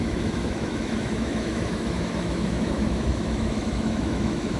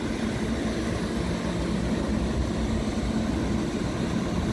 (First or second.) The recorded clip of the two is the second